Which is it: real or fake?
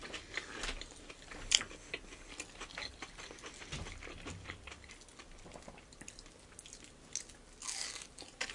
real